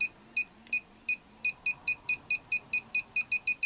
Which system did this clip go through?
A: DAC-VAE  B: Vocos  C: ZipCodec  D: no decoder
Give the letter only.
D